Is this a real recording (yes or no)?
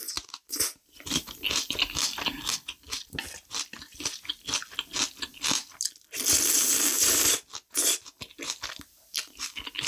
yes